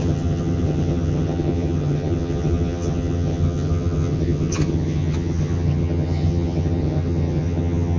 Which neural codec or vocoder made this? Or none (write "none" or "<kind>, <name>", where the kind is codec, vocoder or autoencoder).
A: vocoder, HiFi-GAN